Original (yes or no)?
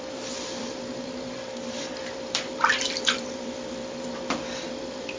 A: no